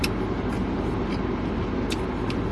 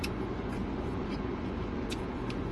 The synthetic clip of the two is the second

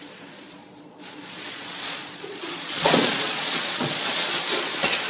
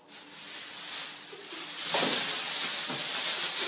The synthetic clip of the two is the first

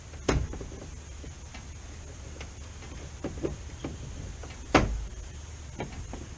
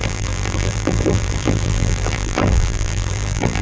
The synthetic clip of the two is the second